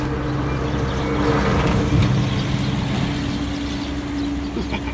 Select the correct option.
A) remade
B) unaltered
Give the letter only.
B